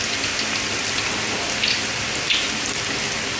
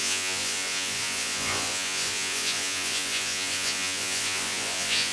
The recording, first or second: first